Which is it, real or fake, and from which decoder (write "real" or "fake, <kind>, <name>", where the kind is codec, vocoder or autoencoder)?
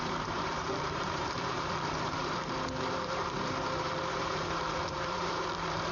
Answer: fake, vocoder, BigVGAN v2